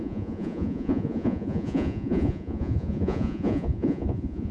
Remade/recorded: remade